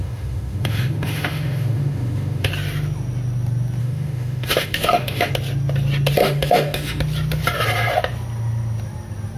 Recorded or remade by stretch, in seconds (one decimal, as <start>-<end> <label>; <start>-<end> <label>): 0.0-2.5 remade; 2.5-3.8 recorded; 3.8-5.3 remade; 5.3-6.2 recorded; 6.2-7.0 remade; 7.0-9.4 recorded